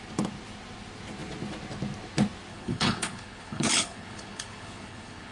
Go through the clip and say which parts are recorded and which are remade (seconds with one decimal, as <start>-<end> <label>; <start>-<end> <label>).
0.0-2.5 recorded; 2.5-5.3 remade